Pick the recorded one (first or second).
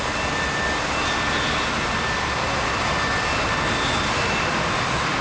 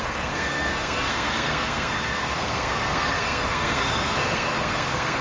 first